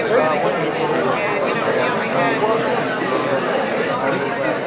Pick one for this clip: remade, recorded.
recorded